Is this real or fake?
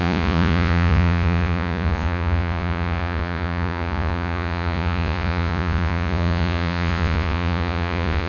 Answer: fake